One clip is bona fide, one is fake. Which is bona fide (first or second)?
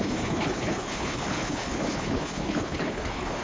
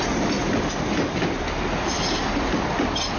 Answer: second